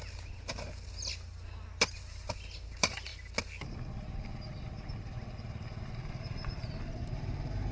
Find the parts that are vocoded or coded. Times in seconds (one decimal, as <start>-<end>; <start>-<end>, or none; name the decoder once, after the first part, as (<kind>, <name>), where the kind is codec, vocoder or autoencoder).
none